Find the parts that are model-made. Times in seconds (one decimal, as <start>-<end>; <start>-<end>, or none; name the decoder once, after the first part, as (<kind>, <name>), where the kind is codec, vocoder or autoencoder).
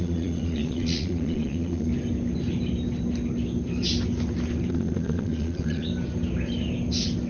0.0-1.9 (vocoder, Vocos); 4.7-5.9